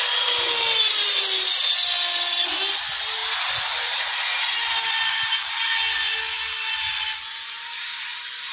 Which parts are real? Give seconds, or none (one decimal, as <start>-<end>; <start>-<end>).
0.0-8.5